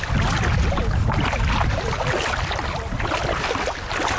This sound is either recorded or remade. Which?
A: recorded